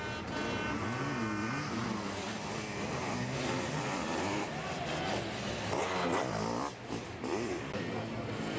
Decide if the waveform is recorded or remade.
recorded